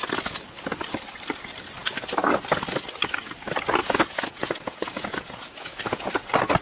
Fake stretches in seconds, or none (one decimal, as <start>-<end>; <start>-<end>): 3.8-6.1